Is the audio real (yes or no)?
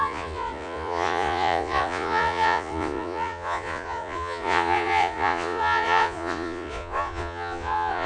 no